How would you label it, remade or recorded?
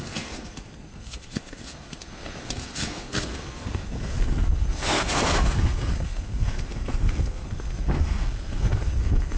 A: remade